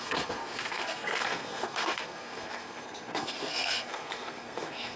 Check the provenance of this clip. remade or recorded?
remade